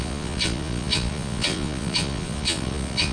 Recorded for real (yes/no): no